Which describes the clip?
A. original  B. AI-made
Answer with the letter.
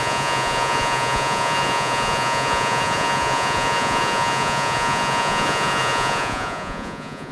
B